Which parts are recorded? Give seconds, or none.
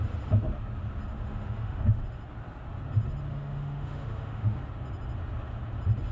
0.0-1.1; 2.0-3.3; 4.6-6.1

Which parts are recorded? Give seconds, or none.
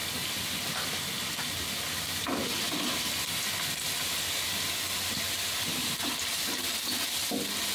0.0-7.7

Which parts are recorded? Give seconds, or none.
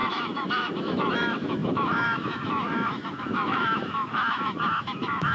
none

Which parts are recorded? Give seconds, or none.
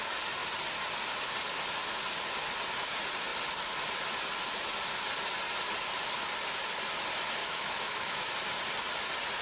0.0-7.4; 8.3-9.4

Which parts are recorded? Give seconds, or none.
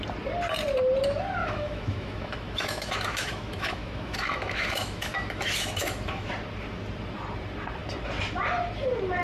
0.0-1.4; 6.3-9.2